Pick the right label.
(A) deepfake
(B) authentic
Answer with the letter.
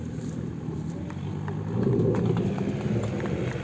B